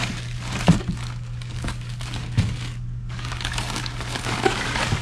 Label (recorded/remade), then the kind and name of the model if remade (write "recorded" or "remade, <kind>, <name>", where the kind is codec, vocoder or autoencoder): remade, codec, DAC